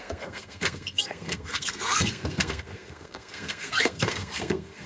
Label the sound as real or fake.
fake